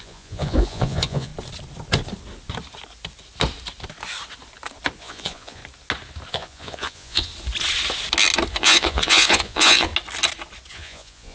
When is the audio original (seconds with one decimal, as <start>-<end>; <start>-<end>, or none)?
1.3-5.0; 5.6-6.3; 7.3-8.5; 9.9-10.7